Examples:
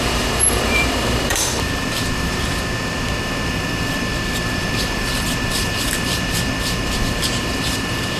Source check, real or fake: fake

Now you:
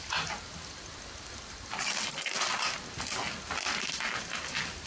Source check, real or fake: real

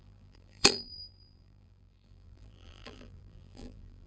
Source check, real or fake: fake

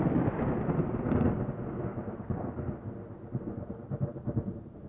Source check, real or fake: real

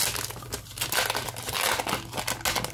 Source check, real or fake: real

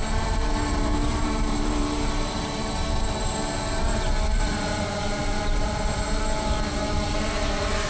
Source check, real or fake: fake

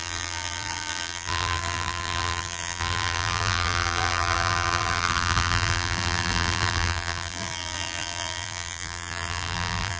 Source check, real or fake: fake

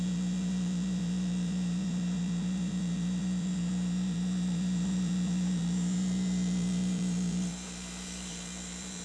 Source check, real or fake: fake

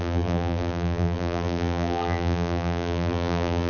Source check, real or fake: fake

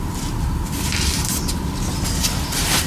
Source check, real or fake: real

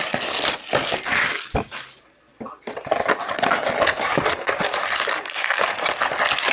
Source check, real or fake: fake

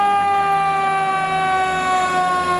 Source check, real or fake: real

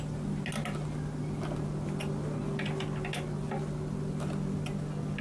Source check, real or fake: real